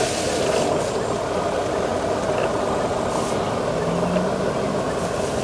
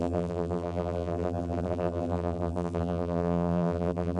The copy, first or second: second